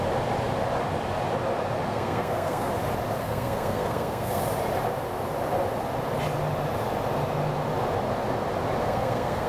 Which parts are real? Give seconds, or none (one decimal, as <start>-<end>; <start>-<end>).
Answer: 0.0-1.9; 2.7-3.2; 4.4-8.8